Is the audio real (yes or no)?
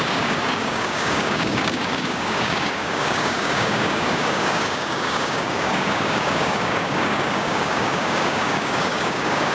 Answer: no